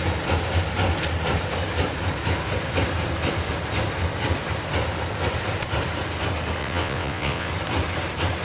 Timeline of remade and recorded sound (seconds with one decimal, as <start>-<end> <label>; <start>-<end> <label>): 0.0-6.6 recorded; 6.6-7.5 remade; 7.5-8.4 recorded